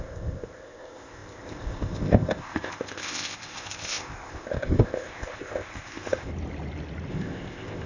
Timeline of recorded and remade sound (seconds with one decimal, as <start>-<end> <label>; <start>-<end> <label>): 0.0-6.3 remade; 6.3-7.1 recorded; 7.1-7.9 remade